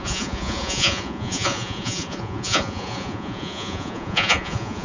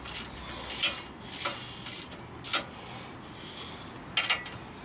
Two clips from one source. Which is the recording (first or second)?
second